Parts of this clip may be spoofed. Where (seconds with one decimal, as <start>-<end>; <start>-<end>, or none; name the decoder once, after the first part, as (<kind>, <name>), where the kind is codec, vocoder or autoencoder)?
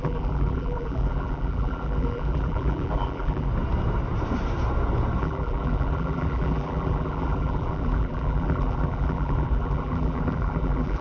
0.0-3.5 (vocoder, BigVGAN v2); 5.2-11.0